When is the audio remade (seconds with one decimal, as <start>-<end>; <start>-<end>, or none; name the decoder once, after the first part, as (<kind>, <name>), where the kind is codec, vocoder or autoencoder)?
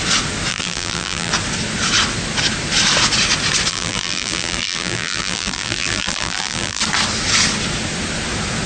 0.5-1.3 (vocoder, BigVGAN v2); 3.7-6.8